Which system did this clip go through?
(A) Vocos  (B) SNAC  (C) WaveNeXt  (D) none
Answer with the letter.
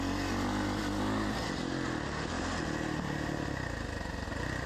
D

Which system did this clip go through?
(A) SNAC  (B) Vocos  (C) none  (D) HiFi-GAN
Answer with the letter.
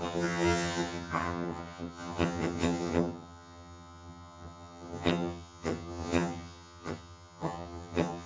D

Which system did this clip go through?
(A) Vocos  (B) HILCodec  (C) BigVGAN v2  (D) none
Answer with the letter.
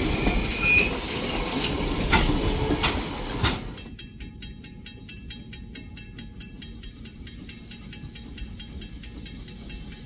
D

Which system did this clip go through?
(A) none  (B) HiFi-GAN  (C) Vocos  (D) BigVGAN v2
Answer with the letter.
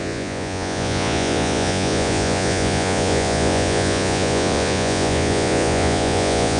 C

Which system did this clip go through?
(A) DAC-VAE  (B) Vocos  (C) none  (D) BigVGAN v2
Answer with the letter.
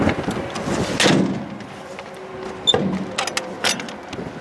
C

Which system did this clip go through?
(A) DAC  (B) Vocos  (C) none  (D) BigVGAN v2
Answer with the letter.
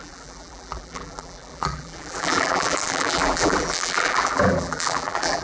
D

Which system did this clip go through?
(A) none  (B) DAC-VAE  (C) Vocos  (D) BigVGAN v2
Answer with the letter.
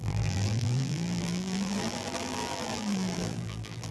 D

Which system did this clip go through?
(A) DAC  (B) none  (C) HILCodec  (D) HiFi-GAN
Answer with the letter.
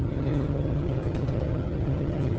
D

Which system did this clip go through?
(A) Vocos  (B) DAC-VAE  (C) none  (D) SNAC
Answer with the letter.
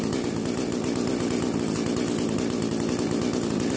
C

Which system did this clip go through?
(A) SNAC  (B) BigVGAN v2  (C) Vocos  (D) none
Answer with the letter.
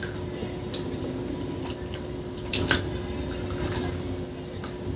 D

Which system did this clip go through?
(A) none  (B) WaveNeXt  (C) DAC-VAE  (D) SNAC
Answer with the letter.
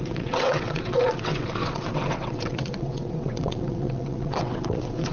B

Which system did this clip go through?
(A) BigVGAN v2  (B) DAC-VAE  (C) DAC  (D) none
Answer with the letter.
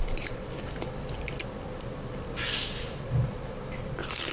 A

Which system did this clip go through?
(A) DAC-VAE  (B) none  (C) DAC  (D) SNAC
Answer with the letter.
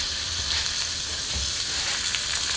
B